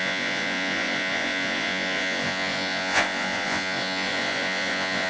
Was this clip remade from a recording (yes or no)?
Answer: yes